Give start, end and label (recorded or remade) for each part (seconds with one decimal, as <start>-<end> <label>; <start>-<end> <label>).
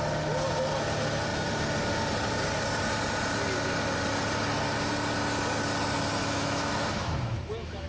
0.0-6.2 recorded; 6.2-7.9 remade